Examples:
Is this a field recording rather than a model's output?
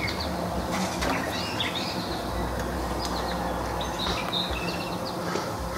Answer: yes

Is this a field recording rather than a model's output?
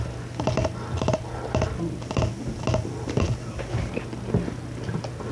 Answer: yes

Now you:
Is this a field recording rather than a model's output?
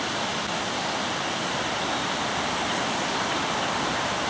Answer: yes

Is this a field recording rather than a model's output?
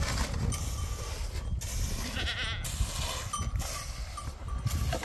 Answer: yes